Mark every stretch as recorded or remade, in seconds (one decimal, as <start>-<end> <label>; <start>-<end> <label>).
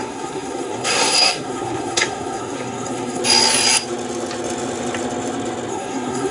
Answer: 0.0-3.2 remade; 3.2-5.7 recorded; 5.7-6.3 remade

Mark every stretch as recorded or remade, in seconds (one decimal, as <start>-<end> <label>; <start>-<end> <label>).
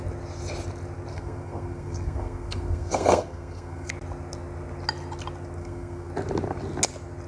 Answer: 0.0-1.1 recorded; 1.1-3.9 remade; 3.9-5.6 recorded; 5.6-6.1 remade; 6.1-7.3 recorded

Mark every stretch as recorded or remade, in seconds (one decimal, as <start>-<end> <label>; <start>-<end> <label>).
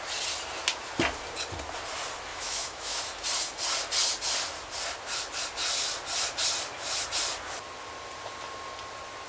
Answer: 0.0-2.3 recorded; 2.3-3.0 remade; 3.0-9.3 recorded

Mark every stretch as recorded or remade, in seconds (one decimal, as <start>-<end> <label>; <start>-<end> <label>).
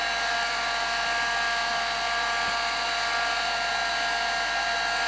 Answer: 0.0-5.1 recorded